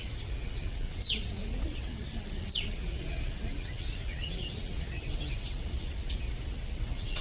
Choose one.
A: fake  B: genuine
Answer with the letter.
A